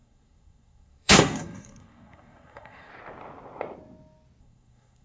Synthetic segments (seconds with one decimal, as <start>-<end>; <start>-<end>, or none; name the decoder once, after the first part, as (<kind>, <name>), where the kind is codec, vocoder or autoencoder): 0.0-2.9 (codec, SNAC); 4.4-5.0